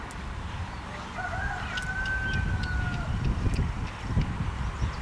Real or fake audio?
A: real